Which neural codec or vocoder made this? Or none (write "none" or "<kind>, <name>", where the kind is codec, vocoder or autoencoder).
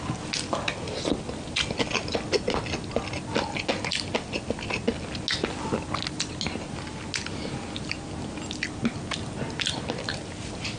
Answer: none